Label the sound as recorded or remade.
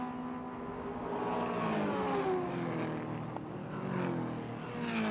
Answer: recorded